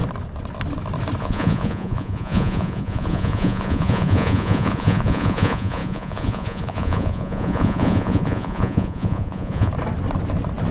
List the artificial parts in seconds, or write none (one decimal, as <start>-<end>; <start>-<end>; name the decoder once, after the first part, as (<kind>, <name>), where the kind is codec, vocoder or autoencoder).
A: 1.2-9.7 (vocoder, Vocos)